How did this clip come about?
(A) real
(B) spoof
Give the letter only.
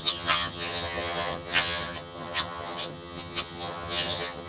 B